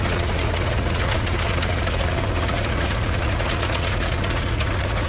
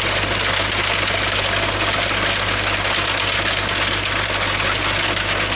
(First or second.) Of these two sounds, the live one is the second